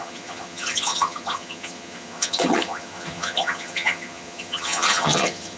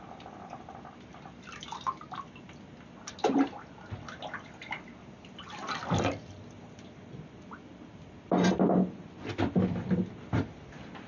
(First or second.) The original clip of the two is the second